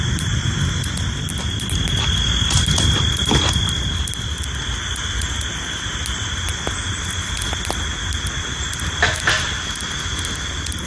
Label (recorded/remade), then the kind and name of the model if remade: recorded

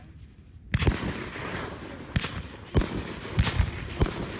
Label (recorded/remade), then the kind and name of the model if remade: recorded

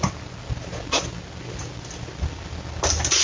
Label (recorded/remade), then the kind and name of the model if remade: recorded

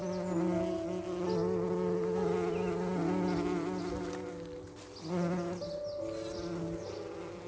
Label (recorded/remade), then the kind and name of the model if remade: recorded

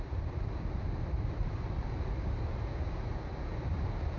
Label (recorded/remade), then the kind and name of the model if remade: recorded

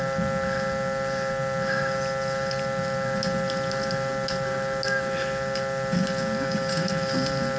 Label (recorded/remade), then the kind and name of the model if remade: recorded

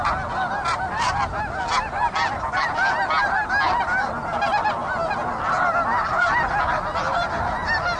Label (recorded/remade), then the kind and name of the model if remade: recorded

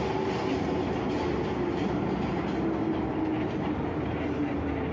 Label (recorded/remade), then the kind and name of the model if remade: recorded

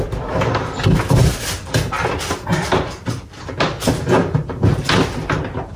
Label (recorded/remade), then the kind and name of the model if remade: recorded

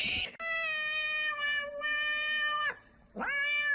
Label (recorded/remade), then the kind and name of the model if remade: recorded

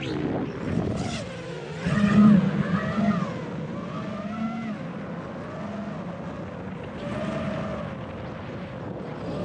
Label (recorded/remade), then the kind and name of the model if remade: recorded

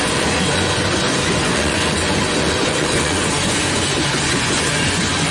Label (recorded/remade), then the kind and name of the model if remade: remade, vocoder, Vocos